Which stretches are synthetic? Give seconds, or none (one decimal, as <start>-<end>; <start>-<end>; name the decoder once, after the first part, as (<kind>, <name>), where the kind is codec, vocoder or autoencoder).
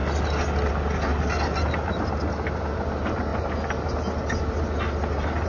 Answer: none